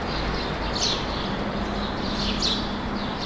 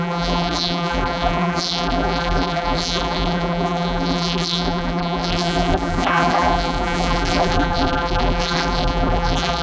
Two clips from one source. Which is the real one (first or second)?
first